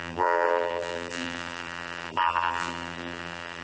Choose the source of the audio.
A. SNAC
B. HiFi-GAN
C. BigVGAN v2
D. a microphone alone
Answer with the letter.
C